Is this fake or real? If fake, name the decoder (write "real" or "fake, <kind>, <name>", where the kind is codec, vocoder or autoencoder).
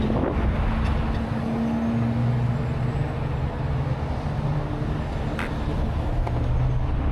real